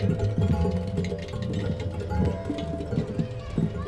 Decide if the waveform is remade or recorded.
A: recorded